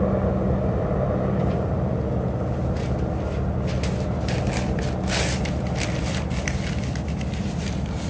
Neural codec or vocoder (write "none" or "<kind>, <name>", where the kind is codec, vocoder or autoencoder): none